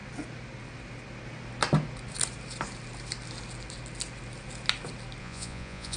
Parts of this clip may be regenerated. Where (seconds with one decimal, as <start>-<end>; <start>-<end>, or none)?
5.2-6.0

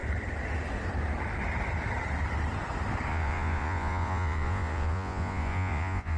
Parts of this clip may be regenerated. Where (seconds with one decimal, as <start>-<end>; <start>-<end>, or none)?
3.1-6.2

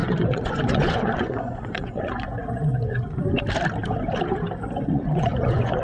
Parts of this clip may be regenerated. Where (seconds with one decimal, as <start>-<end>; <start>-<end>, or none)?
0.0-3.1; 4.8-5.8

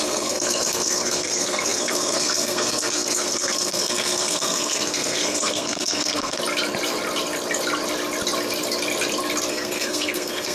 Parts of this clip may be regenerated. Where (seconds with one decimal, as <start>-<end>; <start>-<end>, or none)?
0.0-6.4; 9.5-10.5

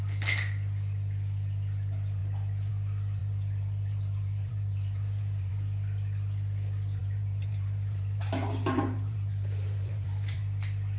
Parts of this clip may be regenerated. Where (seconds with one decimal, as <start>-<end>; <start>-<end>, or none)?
3.2-5.5; 7.0-10.4

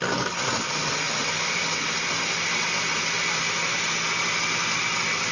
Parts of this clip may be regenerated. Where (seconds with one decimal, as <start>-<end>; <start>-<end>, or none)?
none

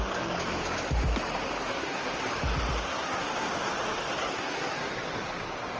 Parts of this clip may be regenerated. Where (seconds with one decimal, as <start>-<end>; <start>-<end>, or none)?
1.7-2.3; 2.9-3.5; 4.2-4.9